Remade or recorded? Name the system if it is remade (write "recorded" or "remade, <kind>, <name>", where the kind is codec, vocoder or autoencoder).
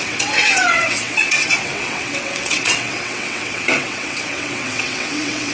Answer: remade, vocoder, WaveNeXt